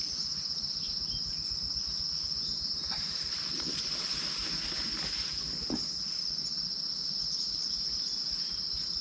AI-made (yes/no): no